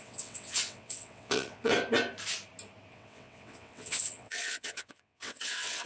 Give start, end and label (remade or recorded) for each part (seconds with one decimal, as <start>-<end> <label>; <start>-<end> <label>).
0.0-1.7 remade; 1.7-2.9 recorded; 2.9-5.9 remade